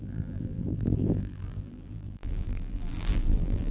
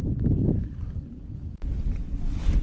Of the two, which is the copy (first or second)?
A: first